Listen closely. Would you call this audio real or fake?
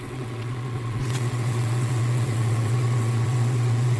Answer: fake